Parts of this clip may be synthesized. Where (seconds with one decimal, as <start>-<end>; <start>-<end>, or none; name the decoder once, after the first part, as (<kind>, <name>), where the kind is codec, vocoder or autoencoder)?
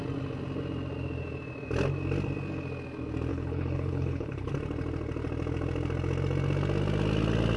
3.3-4.5 (codec, HILCodec)